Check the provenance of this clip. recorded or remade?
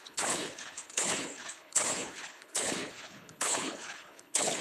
remade